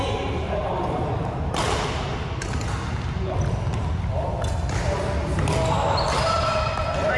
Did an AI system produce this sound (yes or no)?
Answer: no